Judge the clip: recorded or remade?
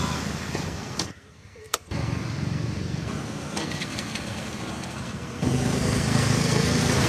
remade